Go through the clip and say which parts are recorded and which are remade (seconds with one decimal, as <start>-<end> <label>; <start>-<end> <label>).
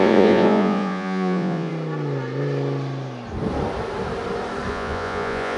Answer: 0.0-1.7 remade; 1.7-4.7 recorded; 4.7-5.6 remade